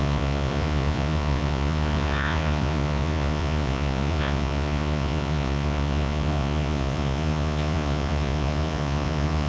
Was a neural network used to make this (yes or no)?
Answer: yes